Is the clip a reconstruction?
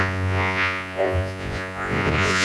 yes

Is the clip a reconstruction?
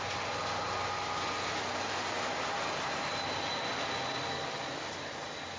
no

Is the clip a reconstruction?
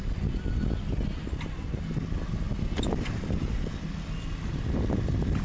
no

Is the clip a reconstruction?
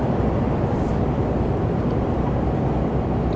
no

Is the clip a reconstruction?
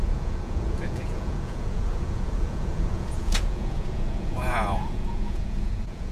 yes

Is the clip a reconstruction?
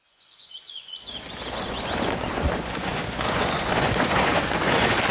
yes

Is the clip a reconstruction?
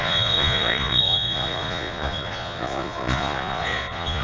yes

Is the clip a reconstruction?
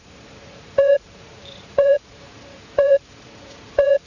yes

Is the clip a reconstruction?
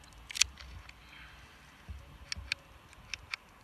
no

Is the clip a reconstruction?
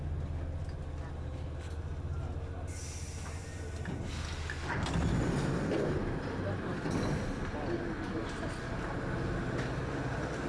no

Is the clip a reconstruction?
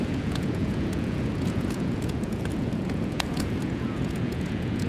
yes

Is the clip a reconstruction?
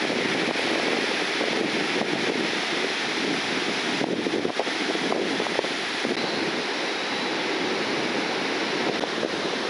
no